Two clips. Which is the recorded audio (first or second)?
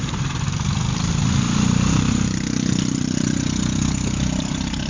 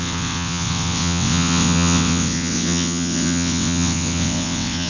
first